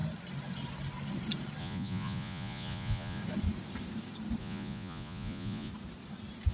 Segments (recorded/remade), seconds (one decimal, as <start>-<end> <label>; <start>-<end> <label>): 0.0-1.6 recorded; 1.6-3.2 remade; 3.2-4.4 recorded; 4.4-5.7 remade; 5.7-6.5 recorded